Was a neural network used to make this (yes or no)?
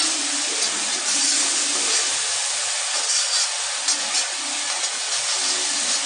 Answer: no